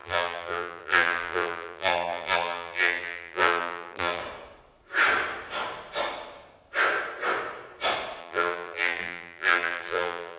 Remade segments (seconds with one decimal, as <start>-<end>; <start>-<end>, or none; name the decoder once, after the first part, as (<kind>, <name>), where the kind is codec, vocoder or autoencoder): 0.0-4.2 (vocoder, BigVGAN v2); 8.2-10.4